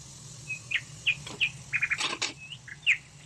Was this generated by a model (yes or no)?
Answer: no